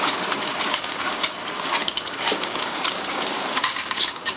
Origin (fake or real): fake